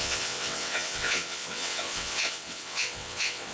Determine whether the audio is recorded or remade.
remade